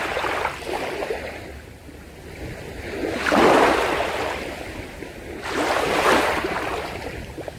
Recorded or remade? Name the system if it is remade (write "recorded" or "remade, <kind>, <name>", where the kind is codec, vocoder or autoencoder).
remade, vocoder, BigVGAN v2